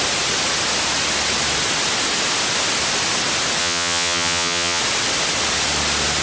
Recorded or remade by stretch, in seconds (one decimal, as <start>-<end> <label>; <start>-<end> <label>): 0.0-3.6 recorded; 3.6-4.8 remade; 4.8-6.2 recorded